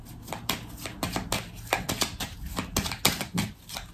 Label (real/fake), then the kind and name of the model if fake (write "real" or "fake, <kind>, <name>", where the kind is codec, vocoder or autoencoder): real